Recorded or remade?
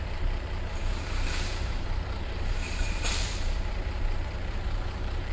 remade